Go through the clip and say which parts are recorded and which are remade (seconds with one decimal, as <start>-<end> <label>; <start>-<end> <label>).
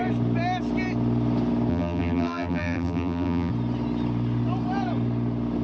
0.0-1.7 recorded; 1.7-3.5 remade; 3.5-5.6 recorded